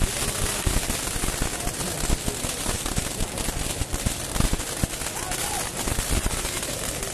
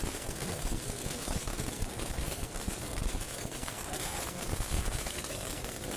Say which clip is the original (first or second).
first